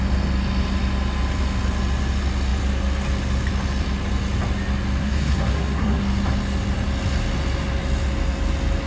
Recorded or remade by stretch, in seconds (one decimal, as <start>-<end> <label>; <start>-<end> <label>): 0.0-5.0 recorded; 5.0-6.0 remade; 6.0-8.9 recorded